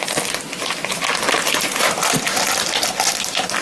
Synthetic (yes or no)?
no